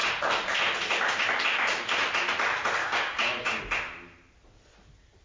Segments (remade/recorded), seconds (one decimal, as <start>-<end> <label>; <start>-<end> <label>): 0.0-2.8 recorded; 2.8-3.6 remade; 3.6-5.2 recorded